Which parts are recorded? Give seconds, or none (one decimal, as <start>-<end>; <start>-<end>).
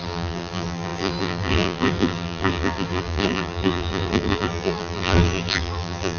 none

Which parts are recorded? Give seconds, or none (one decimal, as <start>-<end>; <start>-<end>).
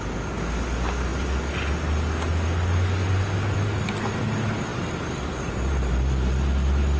0.0-7.0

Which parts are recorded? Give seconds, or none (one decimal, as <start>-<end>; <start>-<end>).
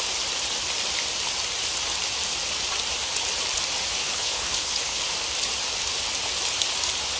0.0-4.0; 5.1-7.2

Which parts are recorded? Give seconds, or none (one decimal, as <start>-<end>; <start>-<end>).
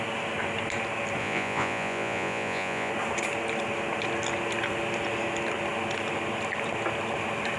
0.0-1.2; 2.9-7.6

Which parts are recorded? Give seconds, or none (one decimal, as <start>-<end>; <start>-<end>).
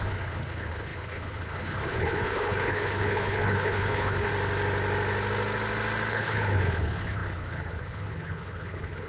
4.3-6.1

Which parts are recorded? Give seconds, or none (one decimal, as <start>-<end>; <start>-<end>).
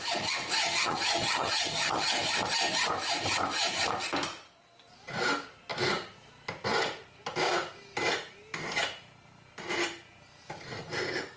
0.0-0.6; 2.1-11.4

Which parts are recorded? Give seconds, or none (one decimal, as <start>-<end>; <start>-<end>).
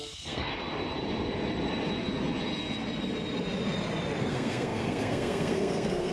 0.5-4.2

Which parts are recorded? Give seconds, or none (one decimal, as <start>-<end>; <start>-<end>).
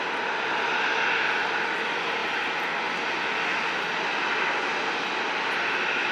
0.0-6.1